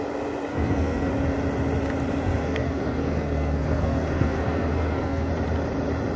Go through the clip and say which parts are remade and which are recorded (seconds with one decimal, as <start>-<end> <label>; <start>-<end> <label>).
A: 0.0-0.5 recorded; 0.5-1.1 remade; 1.1-2.4 recorded; 2.4-5.3 remade; 5.3-6.2 recorded